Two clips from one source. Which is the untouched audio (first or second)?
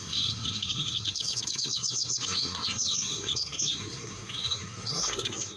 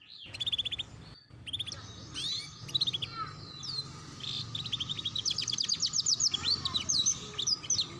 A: second